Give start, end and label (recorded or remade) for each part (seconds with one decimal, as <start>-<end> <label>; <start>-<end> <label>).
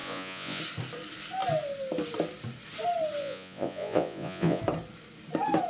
0.0-0.6 remade; 0.6-3.2 recorded; 3.2-4.6 remade; 4.6-5.7 recorded